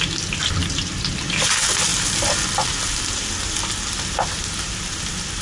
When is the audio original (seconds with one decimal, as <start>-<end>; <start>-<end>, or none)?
0.0-5.4